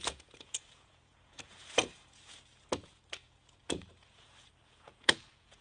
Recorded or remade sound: remade